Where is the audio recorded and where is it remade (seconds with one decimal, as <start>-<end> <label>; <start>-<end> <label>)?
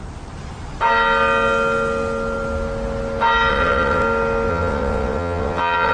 0.0-3.5 recorded; 3.5-4.0 remade; 4.0-4.5 recorded; 4.5-5.9 remade